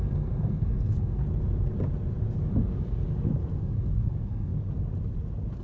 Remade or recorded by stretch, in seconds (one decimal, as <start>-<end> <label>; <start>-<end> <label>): 0.0-1.2 remade; 1.2-3.6 recorded; 3.6-4.5 remade; 4.5-5.6 recorded